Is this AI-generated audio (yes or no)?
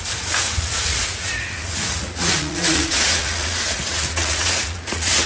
yes